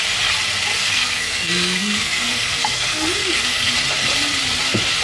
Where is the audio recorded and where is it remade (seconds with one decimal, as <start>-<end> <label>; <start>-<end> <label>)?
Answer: 0.0-0.7 recorded; 0.7-3.7 remade; 3.7-5.0 recorded